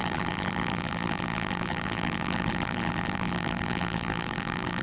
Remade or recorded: remade